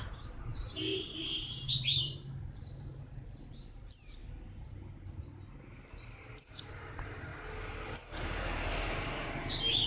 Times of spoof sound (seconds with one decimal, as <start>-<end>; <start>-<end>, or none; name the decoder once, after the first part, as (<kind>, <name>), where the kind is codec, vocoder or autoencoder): 0.0-4.2 (vocoder, BigVGAN v2); 6.4-7.3; 8.2-9.9